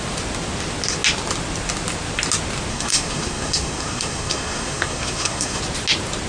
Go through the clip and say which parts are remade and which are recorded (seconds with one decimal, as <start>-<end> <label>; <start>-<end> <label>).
0.0-2.7 recorded; 2.7-5.6 remade; 5.6-6.3 recorded